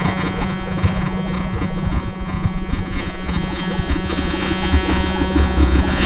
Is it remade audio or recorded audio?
remade